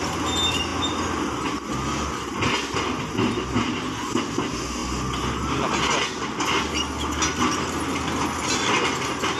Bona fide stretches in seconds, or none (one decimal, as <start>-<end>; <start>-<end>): 0.0-9.4